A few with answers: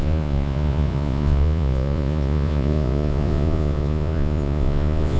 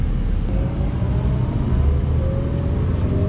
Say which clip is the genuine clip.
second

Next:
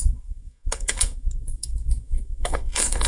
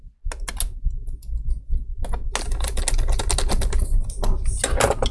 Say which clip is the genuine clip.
second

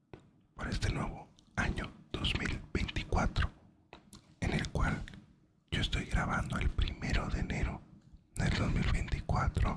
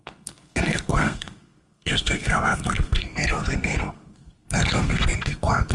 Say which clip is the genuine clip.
first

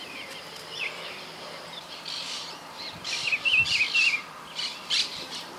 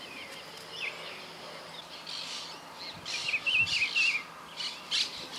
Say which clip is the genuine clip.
second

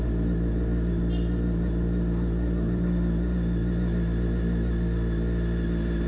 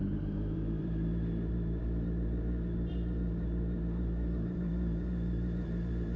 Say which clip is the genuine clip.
first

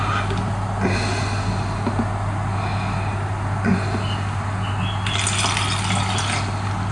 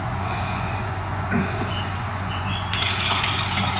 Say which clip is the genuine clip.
first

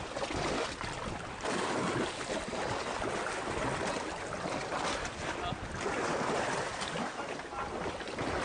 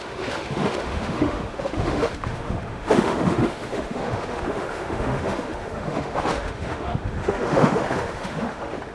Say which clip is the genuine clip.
first